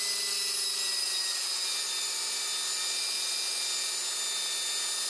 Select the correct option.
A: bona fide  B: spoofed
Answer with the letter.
A